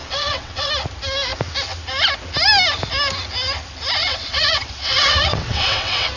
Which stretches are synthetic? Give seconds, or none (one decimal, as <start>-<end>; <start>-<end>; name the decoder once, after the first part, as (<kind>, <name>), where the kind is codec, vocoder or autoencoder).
0.0-0.7 (vocoder, WaveNeXt); 4.0-6.2